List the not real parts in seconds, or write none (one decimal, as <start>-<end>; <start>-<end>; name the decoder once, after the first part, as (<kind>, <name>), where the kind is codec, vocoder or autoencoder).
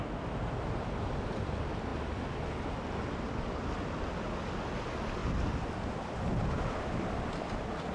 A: none